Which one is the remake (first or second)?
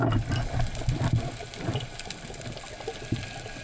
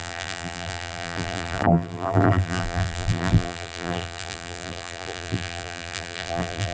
second